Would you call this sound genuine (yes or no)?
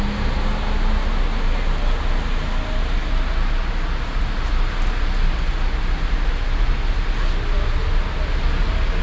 yes